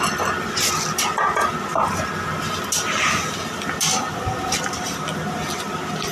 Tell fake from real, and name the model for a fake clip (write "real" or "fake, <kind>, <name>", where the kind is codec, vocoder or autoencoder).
real